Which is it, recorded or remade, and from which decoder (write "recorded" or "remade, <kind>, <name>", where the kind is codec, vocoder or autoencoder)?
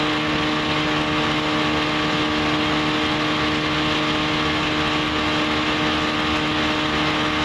recorded